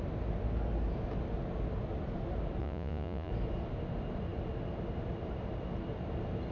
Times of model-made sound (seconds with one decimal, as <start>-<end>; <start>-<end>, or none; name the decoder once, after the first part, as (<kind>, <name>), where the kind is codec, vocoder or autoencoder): 2.6-3.3 (vocoder, Vocos)